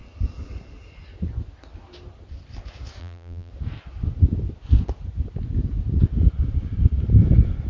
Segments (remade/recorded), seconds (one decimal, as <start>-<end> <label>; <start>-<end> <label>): 0.0-3.0 recorded; 3.0-3.5 remade; 3.5-7.7 recorded